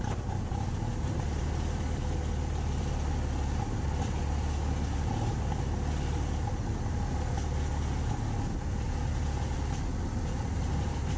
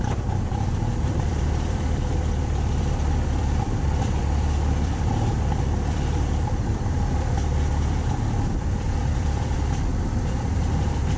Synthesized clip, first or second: second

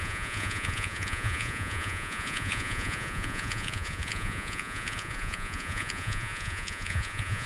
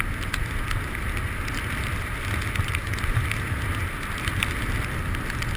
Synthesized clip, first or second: first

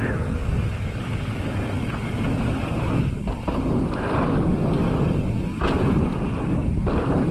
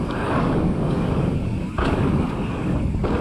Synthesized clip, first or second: second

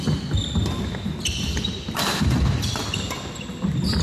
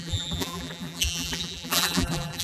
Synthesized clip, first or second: second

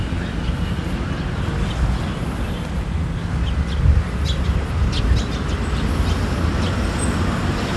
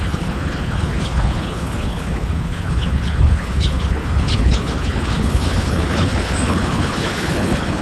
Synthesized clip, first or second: second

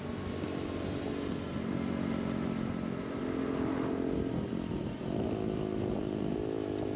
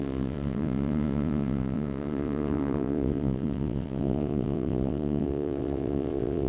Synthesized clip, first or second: second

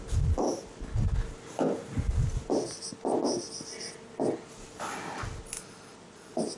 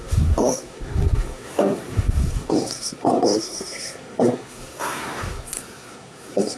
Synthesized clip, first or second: second